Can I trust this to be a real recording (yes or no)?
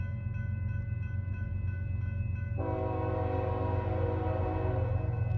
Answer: yes